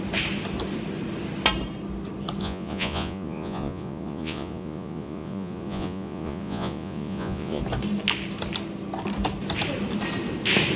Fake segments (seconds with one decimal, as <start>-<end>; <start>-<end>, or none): 2.4-7.6